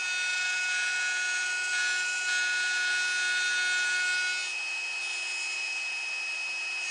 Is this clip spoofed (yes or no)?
no